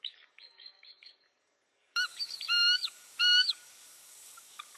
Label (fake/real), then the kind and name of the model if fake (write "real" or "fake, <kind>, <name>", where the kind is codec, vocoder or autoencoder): fake, codec, DAC